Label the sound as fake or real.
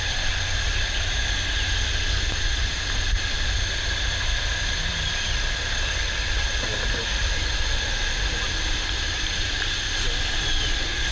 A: real